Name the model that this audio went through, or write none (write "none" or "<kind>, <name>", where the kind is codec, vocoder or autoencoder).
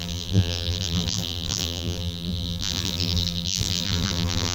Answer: vocoder, BigVGAN v2